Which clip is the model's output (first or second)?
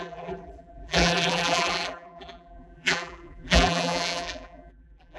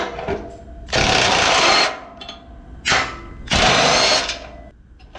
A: first